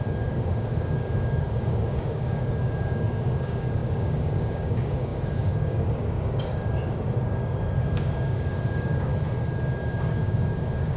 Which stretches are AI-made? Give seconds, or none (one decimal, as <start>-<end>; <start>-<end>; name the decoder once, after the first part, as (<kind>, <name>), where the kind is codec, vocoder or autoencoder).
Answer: 0.0-9.1 (codec, DAC); 9.9-11.0

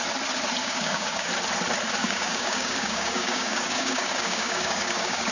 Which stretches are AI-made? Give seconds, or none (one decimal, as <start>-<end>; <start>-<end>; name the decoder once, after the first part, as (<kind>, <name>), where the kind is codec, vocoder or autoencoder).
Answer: 0.6-1.3 (codec, DAC); 2.0-5.3

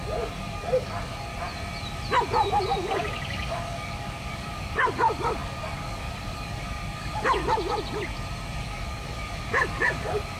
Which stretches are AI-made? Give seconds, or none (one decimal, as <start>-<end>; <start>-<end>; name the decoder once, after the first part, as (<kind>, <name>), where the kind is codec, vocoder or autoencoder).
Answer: 0.0-1.3 (codec, DAC); 2.6-7.4; 8.6-10.4

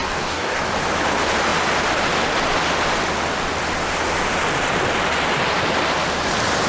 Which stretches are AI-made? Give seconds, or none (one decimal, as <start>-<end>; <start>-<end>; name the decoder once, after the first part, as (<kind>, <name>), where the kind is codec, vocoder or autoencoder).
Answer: 0.0-0.6 (codec, DAC)